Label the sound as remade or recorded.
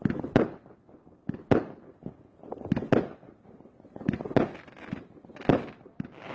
recorded